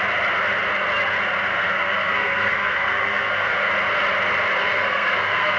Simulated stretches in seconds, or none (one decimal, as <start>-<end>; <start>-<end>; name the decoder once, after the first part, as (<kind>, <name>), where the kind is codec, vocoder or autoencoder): 1.5-3.7 (codec, SNAC); 4.6-5.6